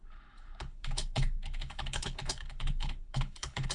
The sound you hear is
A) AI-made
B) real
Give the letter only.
A